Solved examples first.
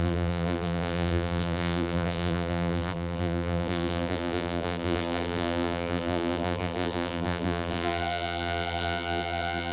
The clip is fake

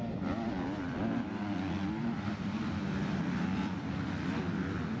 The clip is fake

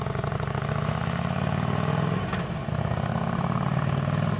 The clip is real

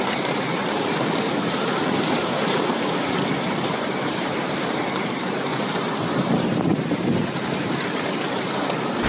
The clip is fake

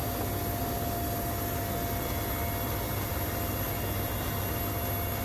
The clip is real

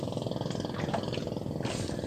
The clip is real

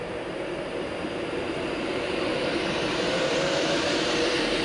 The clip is fake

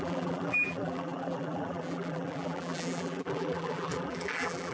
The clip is fake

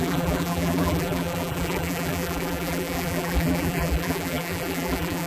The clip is fake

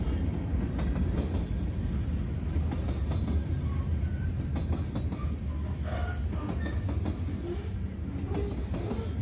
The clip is real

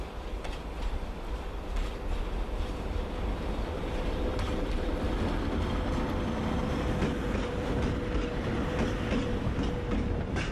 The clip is real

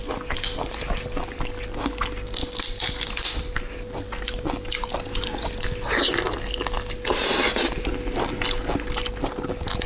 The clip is real